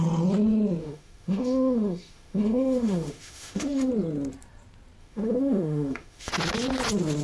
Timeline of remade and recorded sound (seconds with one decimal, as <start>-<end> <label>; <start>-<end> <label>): 0.0-0.8 recorded; 0.8-3.9 remade; 3.9-5.0 recorded; 5.0-6.3 remade; 6.3-7.2 recorded